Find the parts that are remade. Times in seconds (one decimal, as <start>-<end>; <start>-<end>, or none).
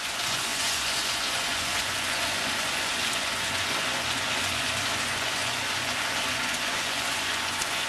0.0-7.9